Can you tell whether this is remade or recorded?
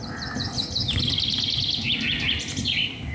recorded